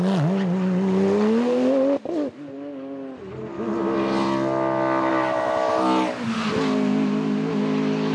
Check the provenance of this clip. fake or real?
real